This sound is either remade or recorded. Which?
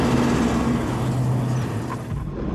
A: recorded